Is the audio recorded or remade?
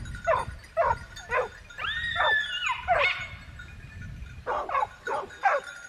recorded